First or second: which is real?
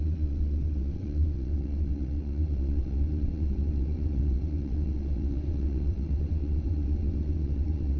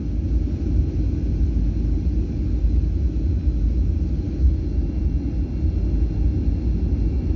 second